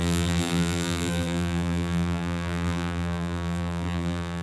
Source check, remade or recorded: remade